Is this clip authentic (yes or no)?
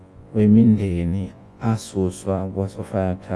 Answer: no